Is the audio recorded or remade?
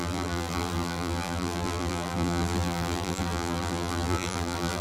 remade